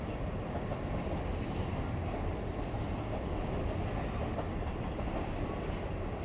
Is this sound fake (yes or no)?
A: no